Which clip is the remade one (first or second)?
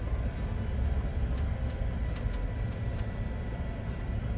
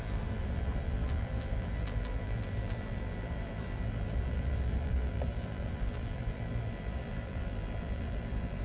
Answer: second